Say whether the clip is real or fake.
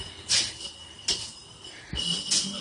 real